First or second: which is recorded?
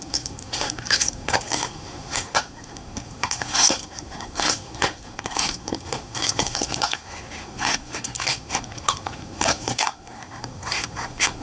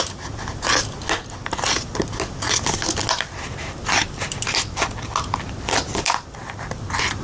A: second